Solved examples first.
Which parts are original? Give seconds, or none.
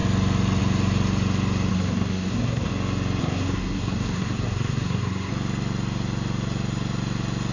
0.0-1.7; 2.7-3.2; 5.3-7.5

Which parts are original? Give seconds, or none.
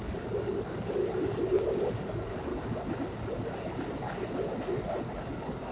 1.0-1.9; 2.5-5.3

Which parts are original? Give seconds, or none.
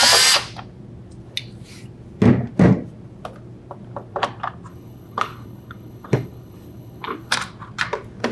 0.0-4.7; 7.3-8.3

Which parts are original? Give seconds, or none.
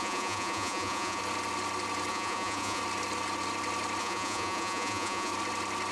1.2-2.1; 2.8-4.0; 5.3-5.9